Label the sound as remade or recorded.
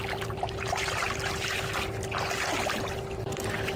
recorded